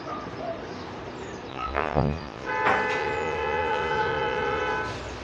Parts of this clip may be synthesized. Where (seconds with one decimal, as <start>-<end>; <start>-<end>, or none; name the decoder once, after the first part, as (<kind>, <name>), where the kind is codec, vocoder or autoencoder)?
1.5-2.5 (vocoder, Vocos); 3.0-4.6